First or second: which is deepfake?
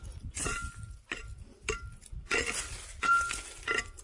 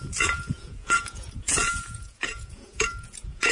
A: second